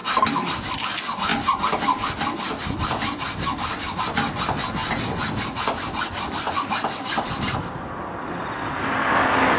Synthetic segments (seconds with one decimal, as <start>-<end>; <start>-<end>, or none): 1.3-4.0